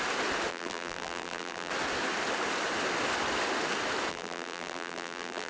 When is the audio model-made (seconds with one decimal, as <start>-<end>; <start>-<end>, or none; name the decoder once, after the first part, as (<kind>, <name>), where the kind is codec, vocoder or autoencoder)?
0.5-1.7 (vocoder, BigVGAN v2); 4.1-5.5